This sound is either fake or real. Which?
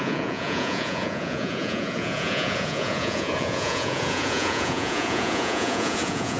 fake